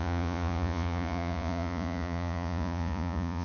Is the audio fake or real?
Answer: fake